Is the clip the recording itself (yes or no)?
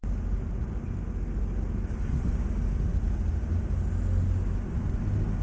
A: yes